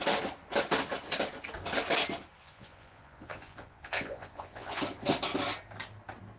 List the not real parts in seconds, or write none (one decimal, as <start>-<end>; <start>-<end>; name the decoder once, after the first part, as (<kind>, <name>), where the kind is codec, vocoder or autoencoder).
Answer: 2.4-4.8 (vocoder, Vocos)